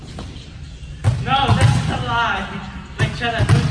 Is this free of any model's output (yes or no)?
yes